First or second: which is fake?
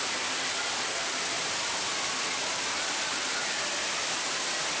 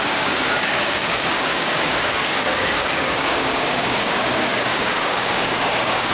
second